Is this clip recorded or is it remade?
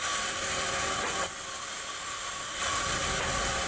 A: recorded